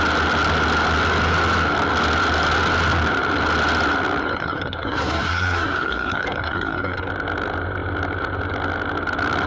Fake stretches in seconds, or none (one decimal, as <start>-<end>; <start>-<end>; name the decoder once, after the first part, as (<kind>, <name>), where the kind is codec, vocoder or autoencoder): 4.2-7.1 (codec, SNAC)